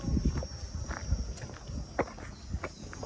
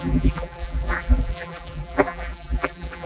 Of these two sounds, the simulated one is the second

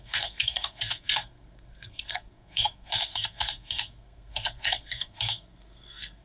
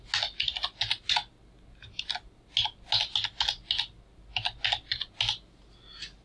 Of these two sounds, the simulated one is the first